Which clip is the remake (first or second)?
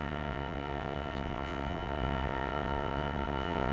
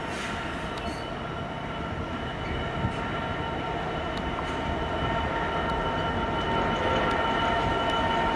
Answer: first